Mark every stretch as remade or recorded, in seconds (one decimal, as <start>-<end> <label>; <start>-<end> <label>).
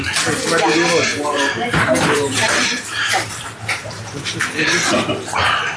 0.0-1.1 recorded; 1.1-4.4 remade; 4.4-5.8 recorded